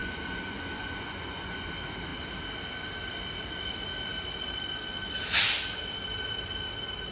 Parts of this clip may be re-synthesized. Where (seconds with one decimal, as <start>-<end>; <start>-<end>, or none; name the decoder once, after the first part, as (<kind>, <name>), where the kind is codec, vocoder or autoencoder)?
0.0-1.7 (vocoder, Vocos)